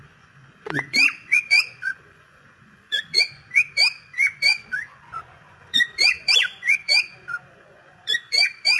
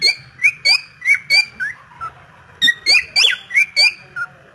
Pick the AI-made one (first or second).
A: first